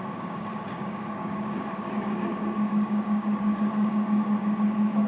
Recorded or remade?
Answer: remade